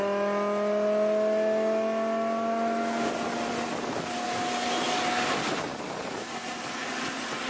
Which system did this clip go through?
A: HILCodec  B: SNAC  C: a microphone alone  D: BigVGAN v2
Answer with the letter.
C